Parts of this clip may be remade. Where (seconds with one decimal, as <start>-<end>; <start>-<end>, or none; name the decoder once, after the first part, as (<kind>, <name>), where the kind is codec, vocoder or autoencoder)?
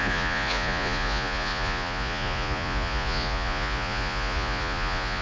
0.0-5.2 (vocoder, Vocos)